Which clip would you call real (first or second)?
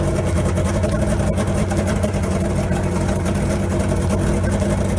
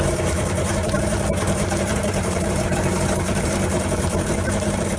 first